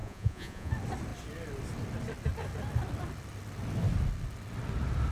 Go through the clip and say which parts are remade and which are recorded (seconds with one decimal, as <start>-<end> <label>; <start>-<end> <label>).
0.0-0.7 remade; 0.7-5.1 recorded

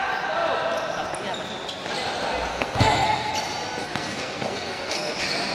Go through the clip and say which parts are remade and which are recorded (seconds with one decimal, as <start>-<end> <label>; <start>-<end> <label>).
0.0-2.5 recorded; 2.5-3.3 remade; 3.3-3.8 recorded; 3.8-5.1 remade; 5.1-5.5 recorded

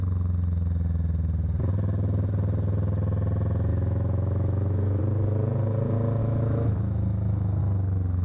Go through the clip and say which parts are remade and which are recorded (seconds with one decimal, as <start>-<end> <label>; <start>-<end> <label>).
0.0-3.7 recorded; 3.7-5.0 remade; 5.0-6.2 recorded; 6.2-7.6 remade; 7.6-8.2 recorded